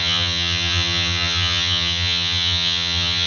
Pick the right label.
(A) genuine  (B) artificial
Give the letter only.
B